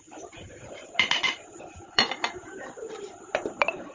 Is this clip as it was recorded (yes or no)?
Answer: no